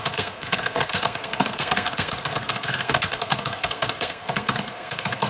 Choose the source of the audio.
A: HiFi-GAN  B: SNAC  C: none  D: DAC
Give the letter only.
B